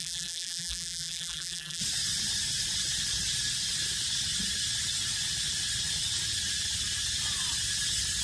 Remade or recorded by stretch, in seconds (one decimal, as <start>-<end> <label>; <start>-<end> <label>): 0.0-1.8 remade; 1.8-8.2 recorded